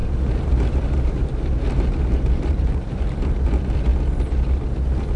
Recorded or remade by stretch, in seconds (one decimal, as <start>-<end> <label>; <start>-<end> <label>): 0.0-3.1 remade; 3.1-5.2 recorded